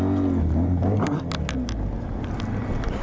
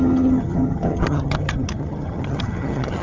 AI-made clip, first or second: second